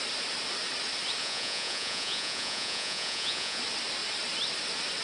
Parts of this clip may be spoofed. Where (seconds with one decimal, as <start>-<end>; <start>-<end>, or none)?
1.2-3.6